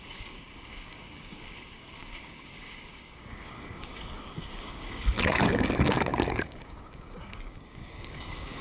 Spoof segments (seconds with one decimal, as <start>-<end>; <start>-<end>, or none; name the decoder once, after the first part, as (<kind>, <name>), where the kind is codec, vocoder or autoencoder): 0.0-8.6 (codec, DAC)